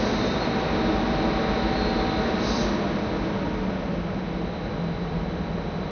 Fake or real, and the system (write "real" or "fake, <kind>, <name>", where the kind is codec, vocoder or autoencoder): real